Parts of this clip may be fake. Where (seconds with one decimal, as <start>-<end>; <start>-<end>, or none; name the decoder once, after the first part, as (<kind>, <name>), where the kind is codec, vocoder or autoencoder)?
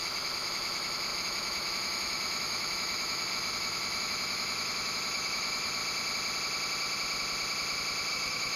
0.0-5.8 (autoencoder, DAC-VAE); 8.1-8.6